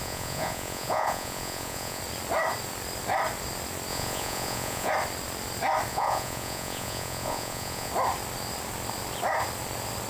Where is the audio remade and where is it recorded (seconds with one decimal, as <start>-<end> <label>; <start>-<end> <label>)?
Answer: 0.0-2.0 remade; 2.0-3.9 recorded; 3.9-4.9 remade; 4.9-5.9 recorded; 5.9-7.9 remade; 7.9-10.1 recorded